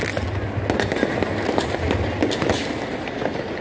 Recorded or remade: recorded